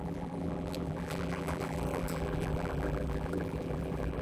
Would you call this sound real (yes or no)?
no